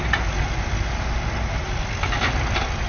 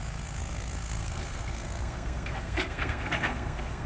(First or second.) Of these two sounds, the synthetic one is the second